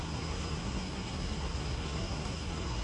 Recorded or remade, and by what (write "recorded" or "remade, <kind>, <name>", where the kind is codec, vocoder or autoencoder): remade, codec, SNAC